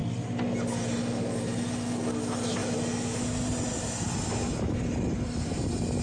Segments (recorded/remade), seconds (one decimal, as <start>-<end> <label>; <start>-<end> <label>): 0.0-6.0 recorded